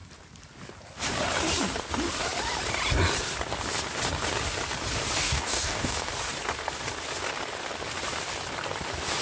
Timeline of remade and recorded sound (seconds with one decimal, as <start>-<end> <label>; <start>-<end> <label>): 0.0-5.2 recorded; 5.2-6.1 remade; 6.1-9.2 recorded